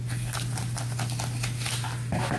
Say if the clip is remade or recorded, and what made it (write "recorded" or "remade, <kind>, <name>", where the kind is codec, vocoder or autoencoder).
recorded